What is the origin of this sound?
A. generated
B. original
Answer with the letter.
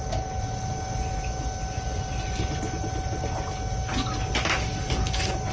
B